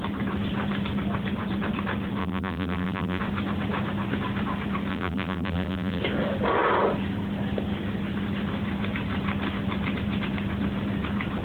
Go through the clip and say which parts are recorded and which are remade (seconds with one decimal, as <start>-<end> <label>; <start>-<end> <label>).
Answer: 0.0-2.2 recorded; 2.2-3.2 remade; 3.2-4.9 recorded; 4.9-6.0 remade; 6.0-11.4 recorded